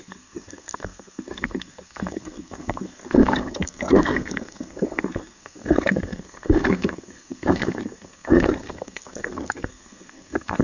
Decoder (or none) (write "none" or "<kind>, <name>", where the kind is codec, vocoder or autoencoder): codec, SNAC